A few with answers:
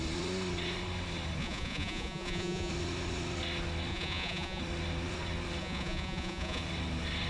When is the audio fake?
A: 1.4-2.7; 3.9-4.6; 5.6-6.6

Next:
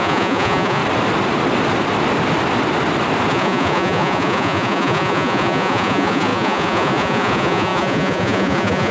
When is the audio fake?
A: 0.0-0.8; 3.3-8.9

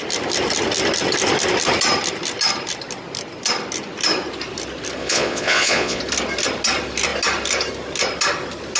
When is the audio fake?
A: 5.0-6.0

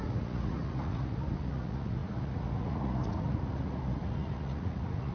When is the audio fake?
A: 0.0-5.1

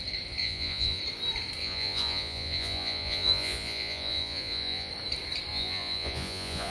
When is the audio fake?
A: 0.4-1.0; 1.6-4.9; 5.5-6.7

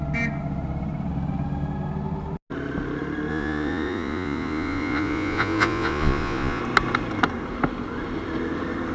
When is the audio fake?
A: 3.3-6.6